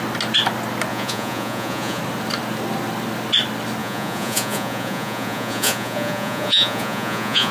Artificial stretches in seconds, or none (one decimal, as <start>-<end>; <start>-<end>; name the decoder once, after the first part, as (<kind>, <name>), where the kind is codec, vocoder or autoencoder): 0.9-2.0 (vocoder, Vocos); 3.8-7.5